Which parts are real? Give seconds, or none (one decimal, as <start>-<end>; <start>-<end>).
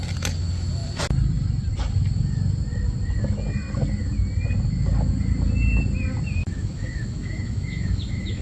0.0-6.4